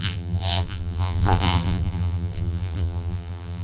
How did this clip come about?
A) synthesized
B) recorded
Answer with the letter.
A